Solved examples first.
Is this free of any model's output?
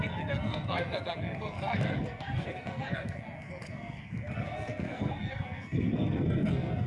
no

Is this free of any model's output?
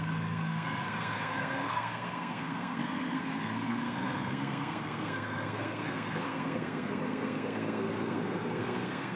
no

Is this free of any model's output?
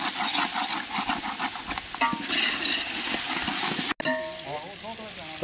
yes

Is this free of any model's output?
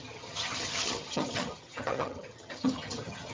no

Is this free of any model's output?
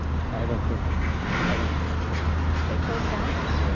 yes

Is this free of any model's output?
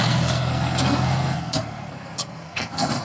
no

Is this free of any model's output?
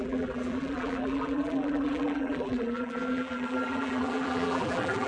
no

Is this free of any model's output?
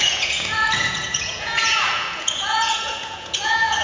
no